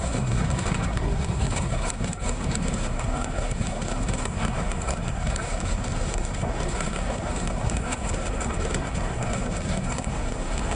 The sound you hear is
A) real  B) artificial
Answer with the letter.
B